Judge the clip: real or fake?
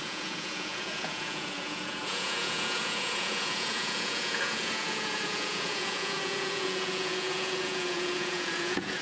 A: fake